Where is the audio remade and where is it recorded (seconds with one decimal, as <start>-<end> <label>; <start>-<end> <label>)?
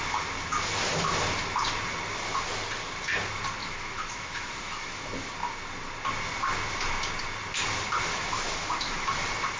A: 0.0-3.6 recorded; 3.6-5.0 remade; 5.0-8.1 recorded; 8.1-9.1 remade; 9.1-9.6 recorded